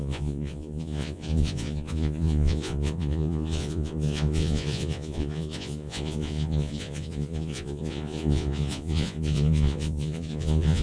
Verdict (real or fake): fake